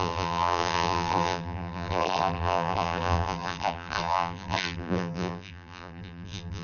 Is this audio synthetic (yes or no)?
yes